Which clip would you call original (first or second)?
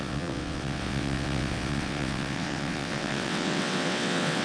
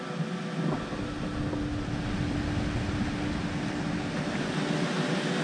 second